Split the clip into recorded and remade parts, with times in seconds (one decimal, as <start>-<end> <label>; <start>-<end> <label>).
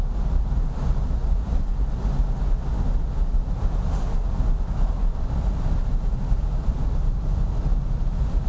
0.0-8.5 recorded